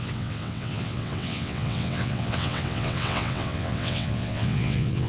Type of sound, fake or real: fake